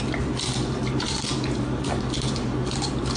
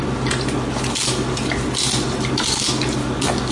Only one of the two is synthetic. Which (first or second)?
first